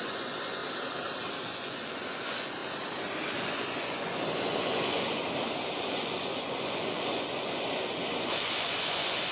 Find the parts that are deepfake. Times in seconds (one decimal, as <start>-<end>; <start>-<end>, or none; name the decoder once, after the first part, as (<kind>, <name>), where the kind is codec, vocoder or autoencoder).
0.0-0.6 (vocoder, Vocos); 1.4-2.6; 3.4-5.2; 5.8-9.3